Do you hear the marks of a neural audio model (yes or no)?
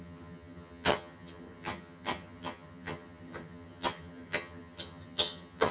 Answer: yes